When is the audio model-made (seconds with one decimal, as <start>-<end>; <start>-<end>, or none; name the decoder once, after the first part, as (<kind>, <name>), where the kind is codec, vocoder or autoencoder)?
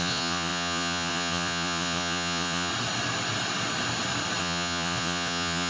0.0-2.7 (vocoder, Vocos); 4.4-5.7